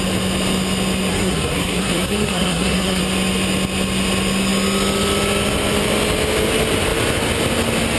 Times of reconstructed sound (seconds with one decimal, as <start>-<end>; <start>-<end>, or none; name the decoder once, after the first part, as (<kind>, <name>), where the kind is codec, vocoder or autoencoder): 1.1-3.0 (codec, SNAC)

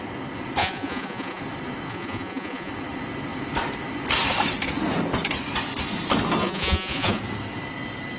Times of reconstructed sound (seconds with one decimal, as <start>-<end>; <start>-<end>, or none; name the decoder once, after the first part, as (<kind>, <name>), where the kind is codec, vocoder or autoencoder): 0.6-1.4 (vocoder, Vocos); 1.9-2.7; 6.4-7.2

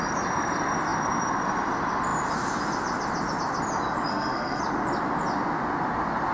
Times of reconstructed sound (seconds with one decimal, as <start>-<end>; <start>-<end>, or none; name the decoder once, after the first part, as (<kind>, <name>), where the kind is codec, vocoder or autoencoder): 4.1-4.6 (codec, SNAC)

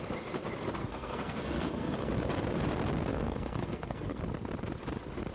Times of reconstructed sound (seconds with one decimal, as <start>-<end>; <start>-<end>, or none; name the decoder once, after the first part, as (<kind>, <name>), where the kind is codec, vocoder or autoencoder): 0.8-2.1 (codec, SNAC); 3.1-4.2

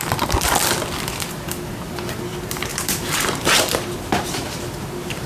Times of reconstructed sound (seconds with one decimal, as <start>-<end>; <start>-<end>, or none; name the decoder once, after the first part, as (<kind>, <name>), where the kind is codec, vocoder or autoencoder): 2.7-3.6 (vocoder, BigVGAN v2); 4.1-4.6